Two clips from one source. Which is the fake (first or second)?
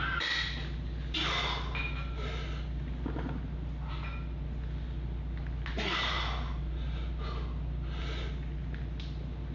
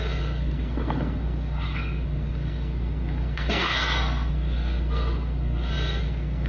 second